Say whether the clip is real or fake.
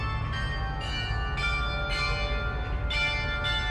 real